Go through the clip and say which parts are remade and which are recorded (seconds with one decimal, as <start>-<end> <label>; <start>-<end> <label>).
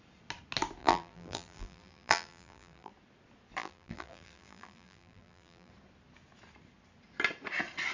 0.0-0.8 recorded; 0.8-2.9 remade; 2.9-3.6 recorded; 3.6-5.7 remade; 5.7-7.9 recorded